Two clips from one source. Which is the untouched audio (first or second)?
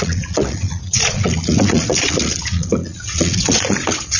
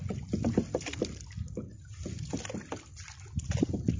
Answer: second